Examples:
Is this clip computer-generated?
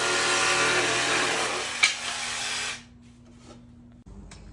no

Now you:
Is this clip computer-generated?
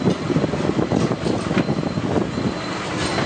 no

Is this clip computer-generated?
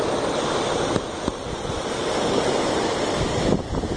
no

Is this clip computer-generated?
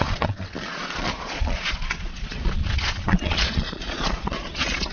yes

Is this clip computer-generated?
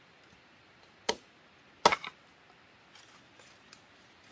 no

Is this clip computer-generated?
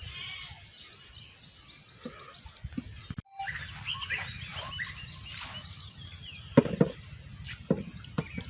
no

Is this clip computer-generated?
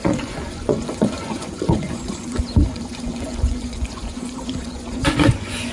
yes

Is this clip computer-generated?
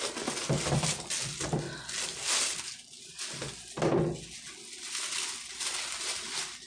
no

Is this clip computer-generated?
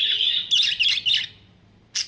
no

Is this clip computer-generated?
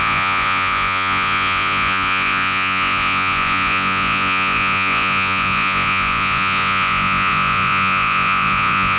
yes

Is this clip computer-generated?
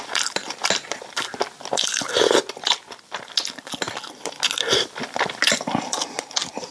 no